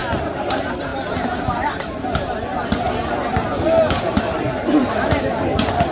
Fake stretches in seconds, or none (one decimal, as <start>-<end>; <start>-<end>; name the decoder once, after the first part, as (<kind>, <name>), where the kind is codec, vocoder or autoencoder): 0.5-0.9 (vocoder, BigVGAN v2); 4.4-5.9